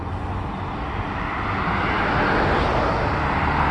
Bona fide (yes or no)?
yes